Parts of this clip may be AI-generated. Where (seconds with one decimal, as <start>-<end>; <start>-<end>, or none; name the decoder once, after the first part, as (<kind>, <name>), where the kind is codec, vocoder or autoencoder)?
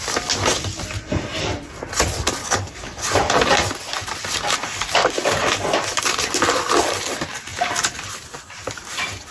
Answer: 2.4-3.0 (codec, DAC)